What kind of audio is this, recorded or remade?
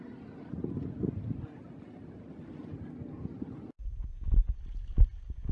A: recorded